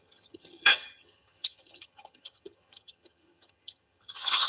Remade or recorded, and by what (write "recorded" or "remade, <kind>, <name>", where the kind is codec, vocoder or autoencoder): remade, vocoder, HiFi-GAN